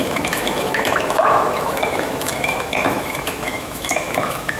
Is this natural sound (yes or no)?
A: no